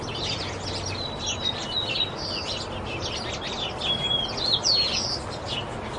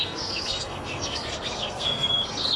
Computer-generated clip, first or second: second